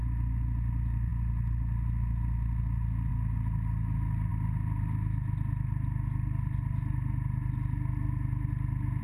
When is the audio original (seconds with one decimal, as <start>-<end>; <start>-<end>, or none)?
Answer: 0.0-9.0